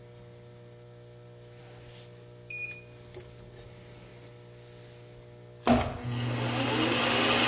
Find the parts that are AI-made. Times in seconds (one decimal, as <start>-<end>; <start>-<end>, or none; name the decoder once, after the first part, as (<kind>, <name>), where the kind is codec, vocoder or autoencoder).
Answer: none

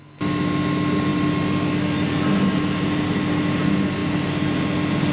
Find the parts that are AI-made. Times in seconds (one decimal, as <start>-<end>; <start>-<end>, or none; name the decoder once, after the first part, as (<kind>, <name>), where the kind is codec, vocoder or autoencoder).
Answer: none

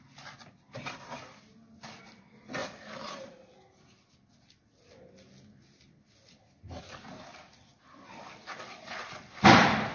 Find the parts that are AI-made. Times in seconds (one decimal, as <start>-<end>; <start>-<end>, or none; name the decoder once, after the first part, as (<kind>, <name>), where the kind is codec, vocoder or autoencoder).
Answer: none